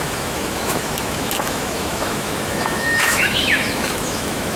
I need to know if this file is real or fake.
fake